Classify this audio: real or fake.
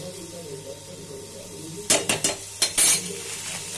real